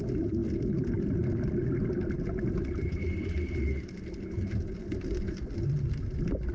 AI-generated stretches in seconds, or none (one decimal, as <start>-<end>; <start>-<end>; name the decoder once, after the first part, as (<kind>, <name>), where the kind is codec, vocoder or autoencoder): none